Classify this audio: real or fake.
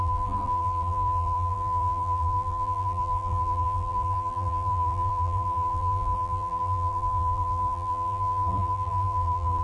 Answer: fake